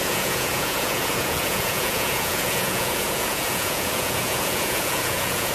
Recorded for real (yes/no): no